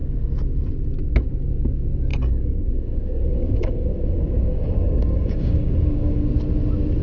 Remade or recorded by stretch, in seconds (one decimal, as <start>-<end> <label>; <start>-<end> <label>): 0.0-2.1 recorded; 2.1-6.3 remade; 6.3-7.0 recorded